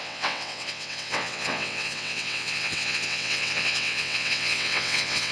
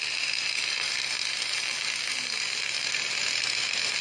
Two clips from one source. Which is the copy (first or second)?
first